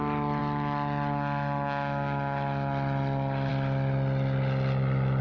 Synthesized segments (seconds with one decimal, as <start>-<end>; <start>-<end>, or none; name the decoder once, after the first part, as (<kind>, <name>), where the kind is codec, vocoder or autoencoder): none